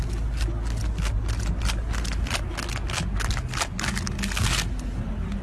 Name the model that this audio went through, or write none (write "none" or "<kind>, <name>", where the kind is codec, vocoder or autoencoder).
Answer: none